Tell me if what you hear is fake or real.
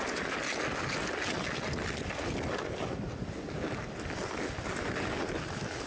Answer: real